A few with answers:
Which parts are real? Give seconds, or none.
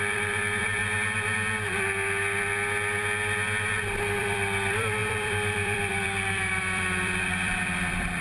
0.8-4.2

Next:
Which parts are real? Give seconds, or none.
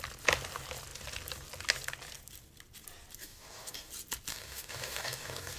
0.0-3.2; 3.9-4.3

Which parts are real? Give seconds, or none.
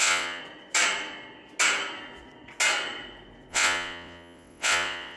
0.4-3.5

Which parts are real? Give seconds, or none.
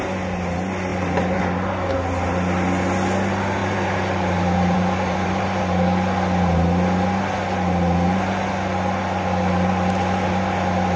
0.0-0.9; 1.4-3.6; 5.6-11.0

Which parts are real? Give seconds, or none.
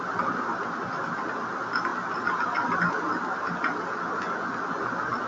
0.0-5.3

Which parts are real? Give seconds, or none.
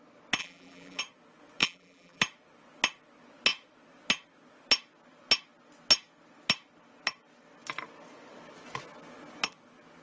0.0-0.4; 1.0-1.6; 2.2-10.0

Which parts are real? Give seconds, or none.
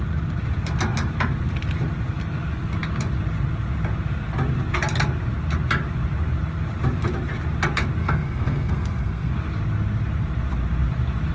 0.0-8.0; 9.3-11.3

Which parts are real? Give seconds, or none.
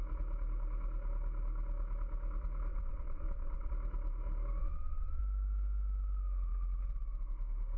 0.0-2.7; 3.7-4.6; 5.2-7.8